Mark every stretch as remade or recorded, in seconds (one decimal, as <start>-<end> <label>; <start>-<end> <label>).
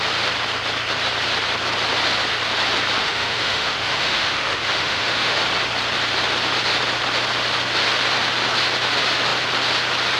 0.0-3.0 recorded; 3.0-5.4 remade; 5.4-10.2 recorded